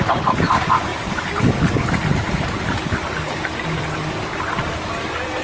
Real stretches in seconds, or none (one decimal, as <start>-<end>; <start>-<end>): 0.0-5.4

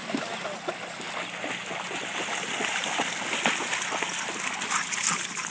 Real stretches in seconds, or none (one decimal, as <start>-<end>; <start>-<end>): 0.0-5.5

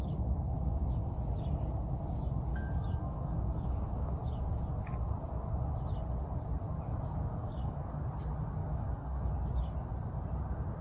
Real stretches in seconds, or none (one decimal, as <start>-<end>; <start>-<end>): 0.0-2.5; 3.8-7.4; 8.0-8.6; 9.3-10.8